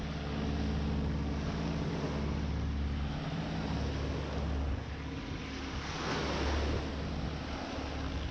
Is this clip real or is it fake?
real